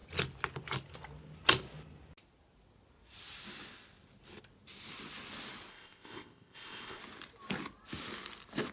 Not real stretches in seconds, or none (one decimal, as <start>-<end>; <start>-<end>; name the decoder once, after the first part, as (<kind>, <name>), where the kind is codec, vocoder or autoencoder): 5.7-7.0 (codec, ZipCodec)